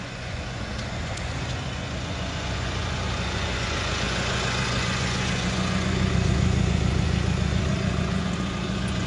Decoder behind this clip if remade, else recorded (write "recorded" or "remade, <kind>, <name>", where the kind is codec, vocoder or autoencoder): remade, vocoder, Vocos